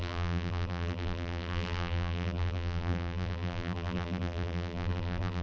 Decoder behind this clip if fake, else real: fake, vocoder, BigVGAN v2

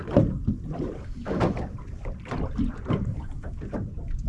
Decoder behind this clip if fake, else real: real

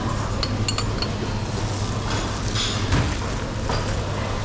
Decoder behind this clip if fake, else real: real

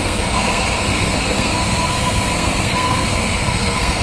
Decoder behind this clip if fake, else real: fake, codec, SNAC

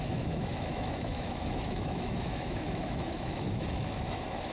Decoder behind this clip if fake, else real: fake, autoencoder, DAC-VAE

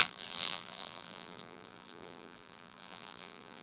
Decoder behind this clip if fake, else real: fake, vocoder, BigVGAN v2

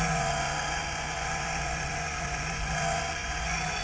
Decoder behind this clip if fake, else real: fake, vocoder, Vocos